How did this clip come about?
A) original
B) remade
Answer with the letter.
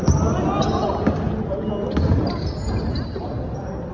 A